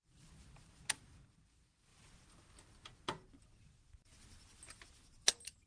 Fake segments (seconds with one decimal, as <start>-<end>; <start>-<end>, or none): none